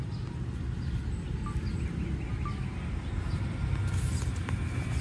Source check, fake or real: real